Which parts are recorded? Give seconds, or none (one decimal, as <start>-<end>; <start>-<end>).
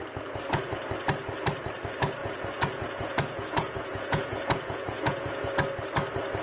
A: 0.0-2.2; 5.5-6.4